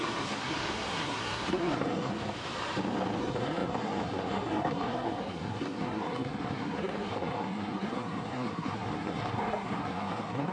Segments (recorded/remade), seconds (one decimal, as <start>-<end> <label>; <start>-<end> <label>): 0.0-2.1 remade; 2.1-3.2 recorded; 3.2-10.5 remade